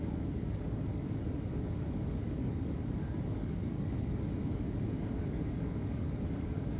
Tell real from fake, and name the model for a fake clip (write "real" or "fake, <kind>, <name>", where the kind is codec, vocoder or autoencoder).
fake, codec, DAC